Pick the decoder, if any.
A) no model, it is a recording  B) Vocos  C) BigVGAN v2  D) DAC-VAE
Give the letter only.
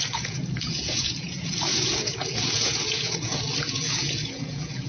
B